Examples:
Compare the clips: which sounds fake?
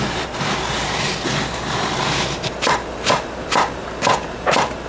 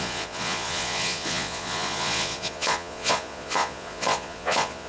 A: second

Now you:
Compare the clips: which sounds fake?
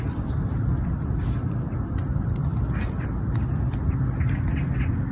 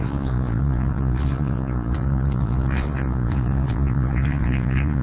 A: second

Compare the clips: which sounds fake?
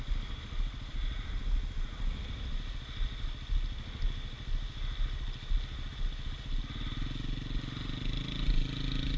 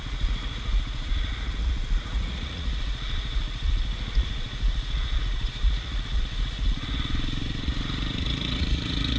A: second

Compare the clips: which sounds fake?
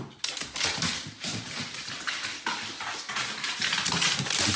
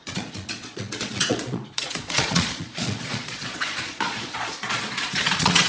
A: second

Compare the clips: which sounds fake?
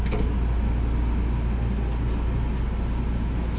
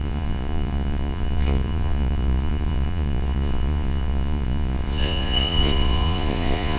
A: second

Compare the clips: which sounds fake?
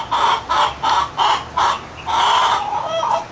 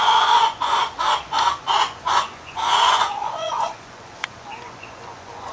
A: second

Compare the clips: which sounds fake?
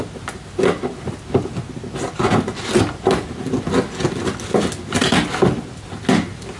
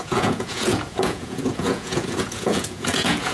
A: second